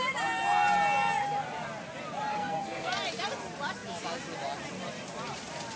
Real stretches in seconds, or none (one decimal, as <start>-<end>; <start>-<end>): 0.0-2.3; 2.9-5.8